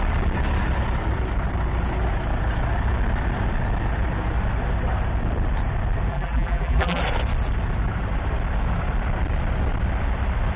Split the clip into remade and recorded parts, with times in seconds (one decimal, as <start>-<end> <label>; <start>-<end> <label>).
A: 0.0-6.1 recorded; 6.1-7.0 remade; 7.0-10.6 recorded